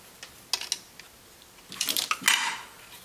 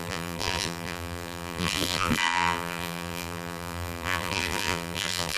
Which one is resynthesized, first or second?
second